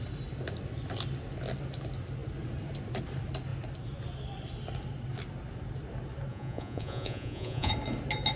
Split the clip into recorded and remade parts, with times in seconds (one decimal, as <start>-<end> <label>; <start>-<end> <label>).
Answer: 0.0-6.3 recorded; 6.3-7.7 remade; 7.7-8.4 recorded